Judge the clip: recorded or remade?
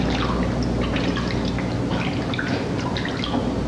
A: recorded